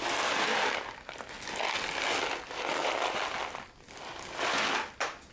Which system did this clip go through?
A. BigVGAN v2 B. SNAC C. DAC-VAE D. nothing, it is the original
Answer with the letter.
D